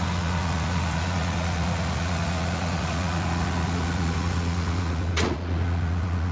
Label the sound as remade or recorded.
remade